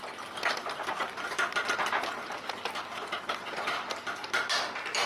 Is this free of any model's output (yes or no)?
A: yes